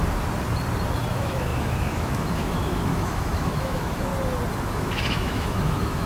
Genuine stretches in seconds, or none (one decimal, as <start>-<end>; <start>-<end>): 0.0-1.1; 4.1-4.6